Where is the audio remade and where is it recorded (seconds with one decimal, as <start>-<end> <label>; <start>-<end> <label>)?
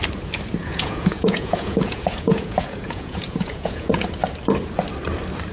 0.0-0.6 recorded; 0.6-3.9 remade; 3.9-5.5 recorded